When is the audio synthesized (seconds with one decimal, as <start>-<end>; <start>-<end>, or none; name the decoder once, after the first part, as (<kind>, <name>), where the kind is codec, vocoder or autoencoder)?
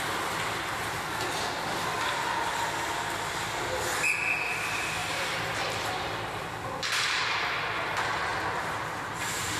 5.0-7.2 (vocoder, BigVGAN v2)